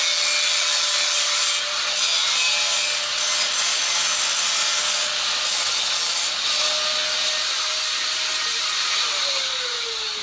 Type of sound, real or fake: real